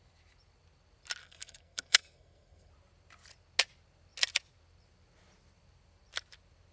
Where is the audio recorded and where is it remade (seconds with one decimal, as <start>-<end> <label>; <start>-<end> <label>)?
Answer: 0.0-1.2 recorded; 1.2-2.7 remade; 2.7-6.7 recorded